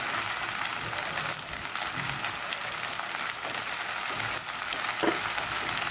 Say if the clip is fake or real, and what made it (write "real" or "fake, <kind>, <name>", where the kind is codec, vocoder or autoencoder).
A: real